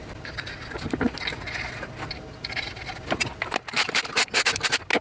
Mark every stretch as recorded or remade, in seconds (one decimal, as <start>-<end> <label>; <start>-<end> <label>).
0.0-5.0 recorded